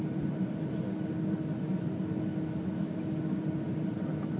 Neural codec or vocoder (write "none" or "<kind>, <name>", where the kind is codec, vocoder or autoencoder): none